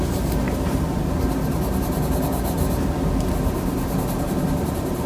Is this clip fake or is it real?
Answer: real